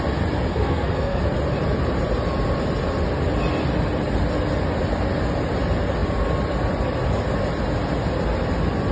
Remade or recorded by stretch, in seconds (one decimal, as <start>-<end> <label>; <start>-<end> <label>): 0.0-0.5 recorded; 0.5-1.2 remade; 1.2-8.9 recorded